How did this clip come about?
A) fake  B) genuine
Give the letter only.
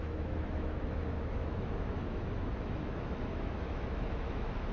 A